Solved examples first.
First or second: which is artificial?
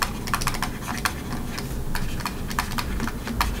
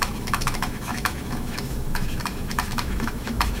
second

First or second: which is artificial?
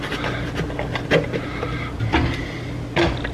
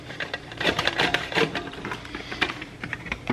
second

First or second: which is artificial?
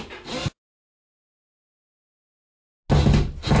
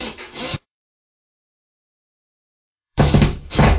second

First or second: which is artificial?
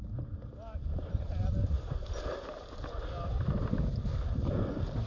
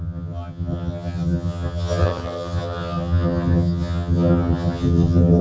second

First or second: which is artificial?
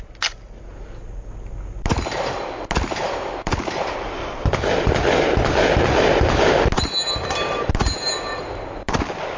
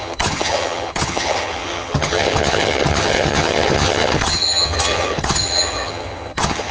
second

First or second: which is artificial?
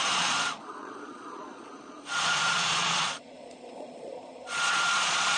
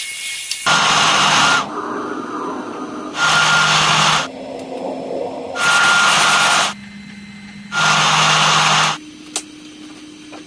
first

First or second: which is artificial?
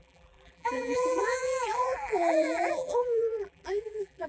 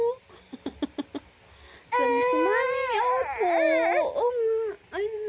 first